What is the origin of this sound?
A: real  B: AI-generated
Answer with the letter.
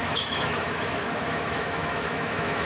B